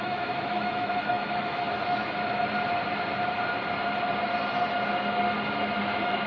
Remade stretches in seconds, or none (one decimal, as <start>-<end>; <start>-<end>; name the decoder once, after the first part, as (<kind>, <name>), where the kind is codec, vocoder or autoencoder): 0.0-2.0 (autoencoder, DAC-VAE); 5.8-6.3